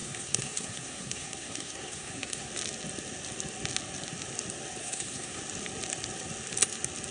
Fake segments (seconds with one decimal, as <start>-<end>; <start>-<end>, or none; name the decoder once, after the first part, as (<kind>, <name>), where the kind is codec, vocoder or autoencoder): 0.0-2.5 (codec, SNAC); 4.8-5.4